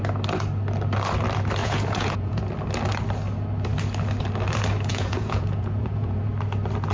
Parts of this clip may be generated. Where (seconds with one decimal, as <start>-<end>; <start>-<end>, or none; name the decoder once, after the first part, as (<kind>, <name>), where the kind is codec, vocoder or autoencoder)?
1.6-2.4 (vocoder, Vocos); 4.9-6.3